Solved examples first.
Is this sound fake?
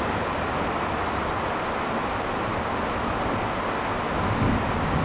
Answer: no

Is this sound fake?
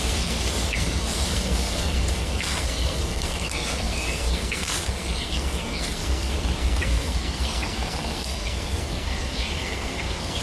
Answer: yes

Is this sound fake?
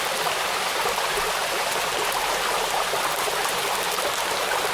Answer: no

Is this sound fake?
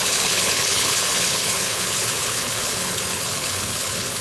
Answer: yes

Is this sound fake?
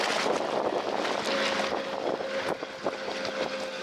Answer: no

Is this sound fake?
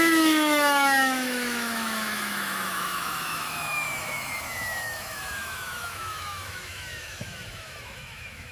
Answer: yes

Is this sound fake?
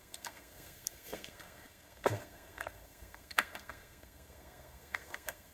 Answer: yes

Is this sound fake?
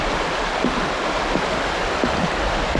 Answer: no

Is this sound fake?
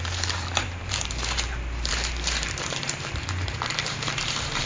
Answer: yes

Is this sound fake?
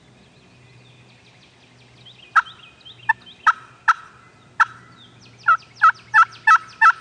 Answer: no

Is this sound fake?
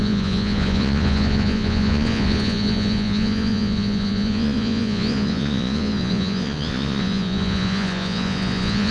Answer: yes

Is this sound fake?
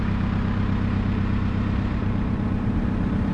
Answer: yes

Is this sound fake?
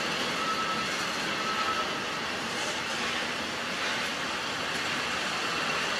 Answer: no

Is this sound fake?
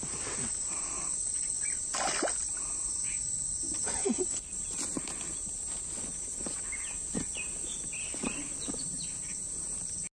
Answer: no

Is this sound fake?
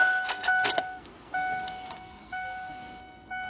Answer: yes